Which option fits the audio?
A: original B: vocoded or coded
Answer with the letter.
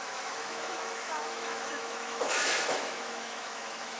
B